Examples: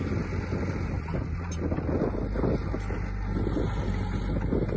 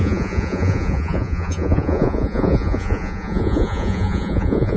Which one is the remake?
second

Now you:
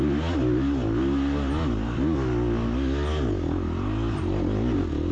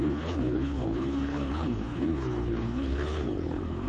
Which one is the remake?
second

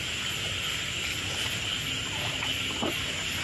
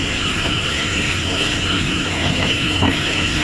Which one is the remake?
second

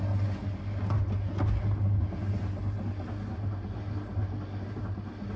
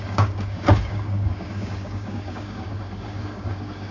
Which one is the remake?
second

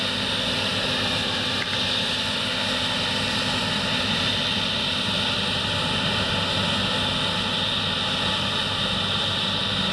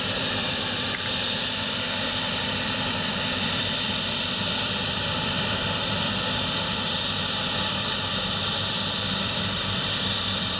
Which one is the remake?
second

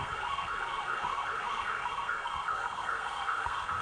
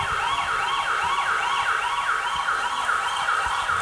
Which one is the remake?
first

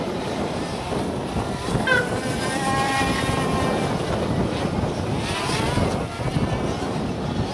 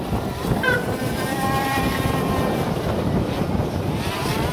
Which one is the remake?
second